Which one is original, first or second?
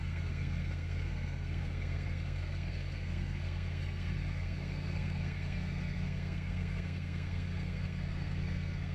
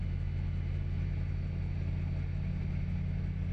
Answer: second